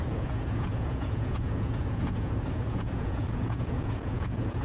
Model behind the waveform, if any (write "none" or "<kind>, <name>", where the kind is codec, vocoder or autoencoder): vocoder, Vocos